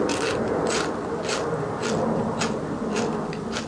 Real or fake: real